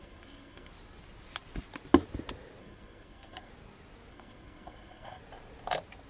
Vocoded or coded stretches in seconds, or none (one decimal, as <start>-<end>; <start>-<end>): 0.0-0.7; 2.6-3.5; 4.1-5.2